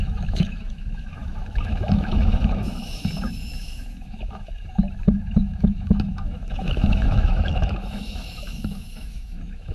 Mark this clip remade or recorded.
remade